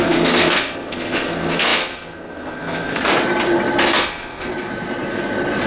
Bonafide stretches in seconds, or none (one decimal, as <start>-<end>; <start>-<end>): 3.1-3.8; 4.5-5.7